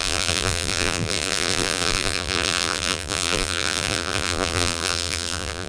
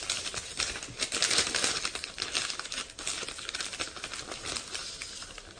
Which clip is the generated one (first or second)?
first